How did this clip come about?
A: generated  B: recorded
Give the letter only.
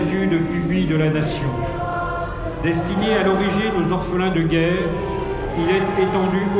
B